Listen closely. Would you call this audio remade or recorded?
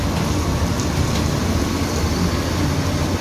recorded